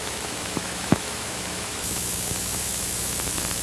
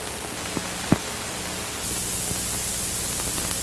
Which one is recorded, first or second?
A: second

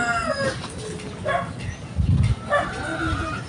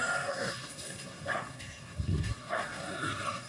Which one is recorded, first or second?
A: first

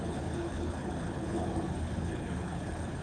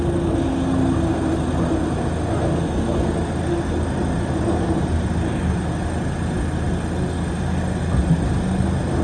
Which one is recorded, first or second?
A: second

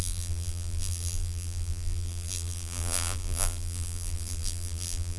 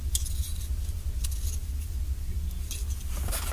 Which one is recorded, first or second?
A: second